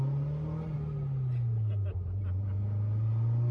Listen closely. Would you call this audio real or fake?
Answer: real